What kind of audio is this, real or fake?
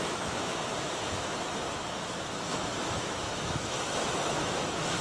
fake